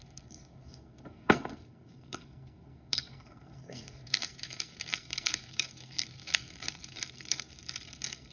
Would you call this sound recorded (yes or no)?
no